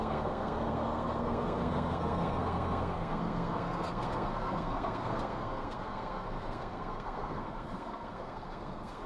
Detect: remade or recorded remade